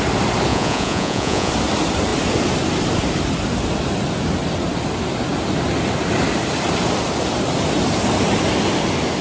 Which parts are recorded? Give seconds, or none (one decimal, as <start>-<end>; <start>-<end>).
0.0-0.5; 1.5-9.2